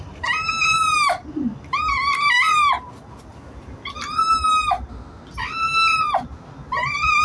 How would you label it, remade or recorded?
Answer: recorded